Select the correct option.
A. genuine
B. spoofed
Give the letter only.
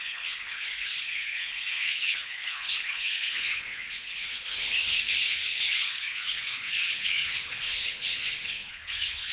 B